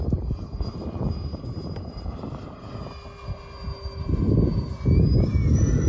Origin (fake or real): real